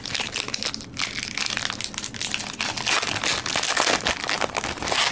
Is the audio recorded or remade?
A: recorded